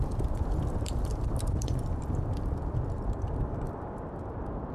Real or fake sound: fake